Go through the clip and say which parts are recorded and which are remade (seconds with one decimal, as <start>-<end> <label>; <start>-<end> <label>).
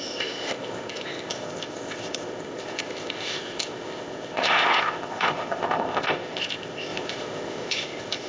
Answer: 0.0-8.3 remade